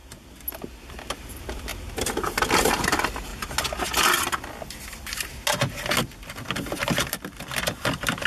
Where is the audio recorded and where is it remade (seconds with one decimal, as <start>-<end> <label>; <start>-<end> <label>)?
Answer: 0.0-0.9 recorded; 0.9-1.7 remade; 1.7-2.3 recorded; 2.3-3.3 remade; 3.3-6.8 recorded; 6.8-8.3 remade